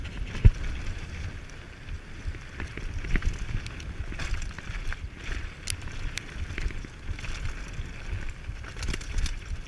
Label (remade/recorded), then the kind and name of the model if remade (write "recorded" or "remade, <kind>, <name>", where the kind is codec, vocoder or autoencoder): recorded